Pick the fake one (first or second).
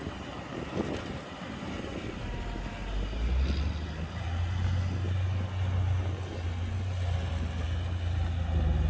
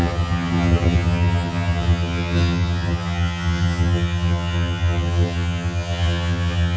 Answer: second